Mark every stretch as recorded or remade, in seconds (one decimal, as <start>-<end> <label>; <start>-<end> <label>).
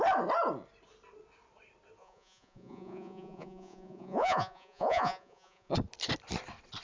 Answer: 0.0-2.0 recorded; 2.0-5.7 remade; 5.7-6.8 recorded